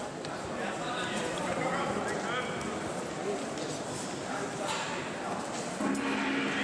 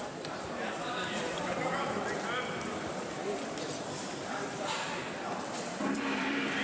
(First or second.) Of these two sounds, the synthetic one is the second